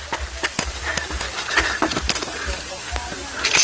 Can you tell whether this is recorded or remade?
recorded